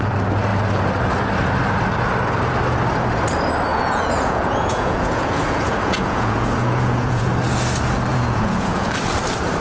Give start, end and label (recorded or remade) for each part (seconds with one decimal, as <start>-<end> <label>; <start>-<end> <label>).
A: 0.0-3.7 recorded; 3.7-7.3 remade; 7.3-8.1 recorded; 8.1-8.9 remade; 8.9-9.6 recorded